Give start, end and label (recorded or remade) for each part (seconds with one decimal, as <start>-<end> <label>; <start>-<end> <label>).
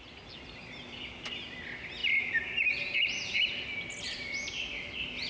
0.0-5.3 recorded